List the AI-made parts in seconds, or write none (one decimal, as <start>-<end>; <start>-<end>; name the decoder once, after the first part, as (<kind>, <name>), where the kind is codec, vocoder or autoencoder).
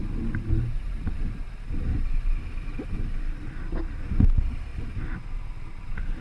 4.7-5.2 (vocoder, BigVGAN v2)